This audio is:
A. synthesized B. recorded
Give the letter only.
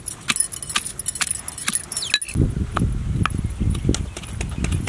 B